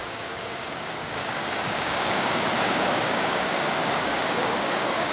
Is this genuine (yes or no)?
no